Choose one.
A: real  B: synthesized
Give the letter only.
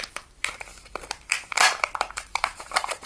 B